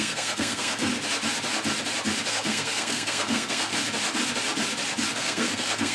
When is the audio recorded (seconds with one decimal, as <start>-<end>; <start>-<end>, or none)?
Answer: 0.9-2.3; 3.7-5.1